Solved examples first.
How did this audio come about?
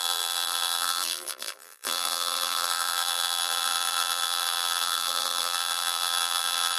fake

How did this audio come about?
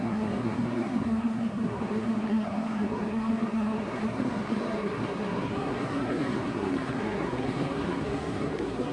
fake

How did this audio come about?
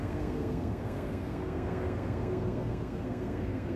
fake